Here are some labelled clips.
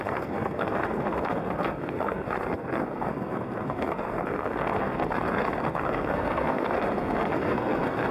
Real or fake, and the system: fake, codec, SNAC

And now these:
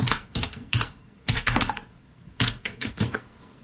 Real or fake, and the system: fake, codec, SNAC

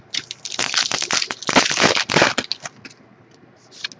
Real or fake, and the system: real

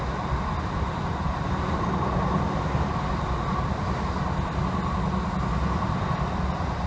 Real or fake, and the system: real